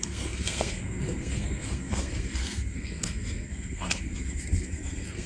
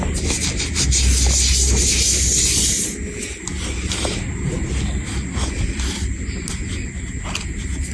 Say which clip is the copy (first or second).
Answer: first